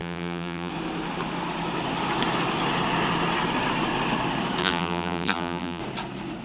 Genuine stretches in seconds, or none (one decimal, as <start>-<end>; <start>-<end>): 0.7-4.6; 5.8-6.4